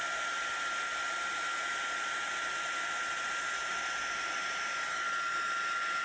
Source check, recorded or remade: recorded